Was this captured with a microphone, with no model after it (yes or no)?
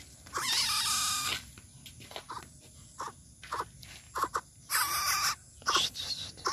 yes